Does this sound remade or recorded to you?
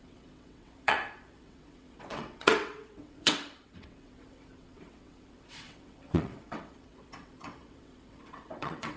remade